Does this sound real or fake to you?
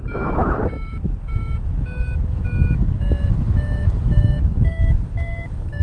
fake